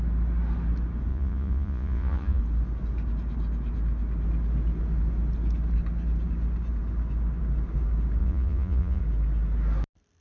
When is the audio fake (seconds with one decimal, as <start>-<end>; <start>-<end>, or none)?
1.1-2.4; 8.2-9.0

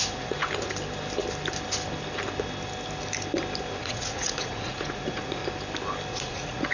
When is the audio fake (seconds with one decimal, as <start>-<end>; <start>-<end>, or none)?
0.0-0.4; 3.8-5.4; 6.1-6.7